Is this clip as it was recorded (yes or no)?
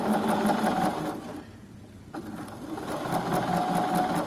yes